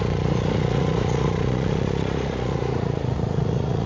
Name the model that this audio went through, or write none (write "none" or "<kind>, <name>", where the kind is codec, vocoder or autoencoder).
vocoder, Vocos